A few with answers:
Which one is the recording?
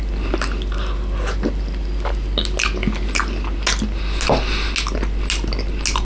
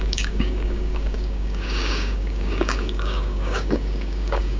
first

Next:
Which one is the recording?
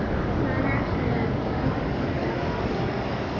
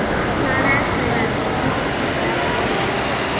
second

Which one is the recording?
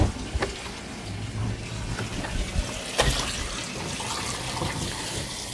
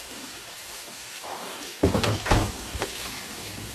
first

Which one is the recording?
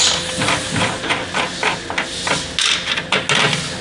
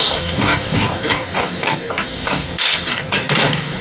first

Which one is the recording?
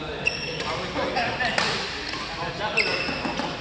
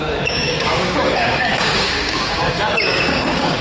first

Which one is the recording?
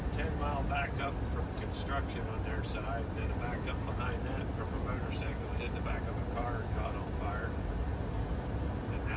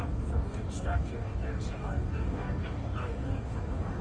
first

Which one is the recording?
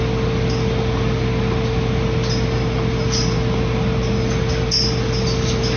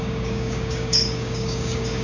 first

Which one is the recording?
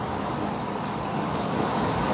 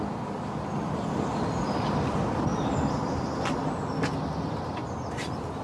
second